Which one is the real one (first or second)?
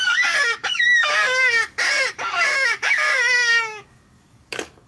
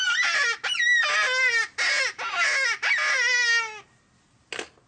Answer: second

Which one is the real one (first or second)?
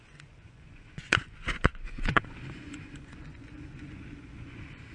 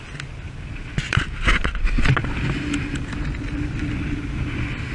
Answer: second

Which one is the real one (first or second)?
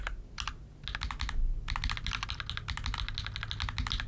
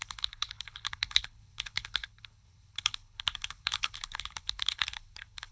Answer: first